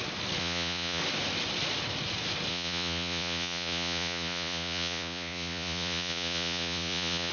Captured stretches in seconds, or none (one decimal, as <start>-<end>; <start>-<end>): 0.0-0.4; 1.0-2.5